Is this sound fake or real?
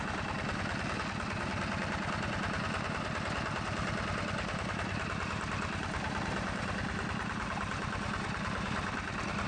real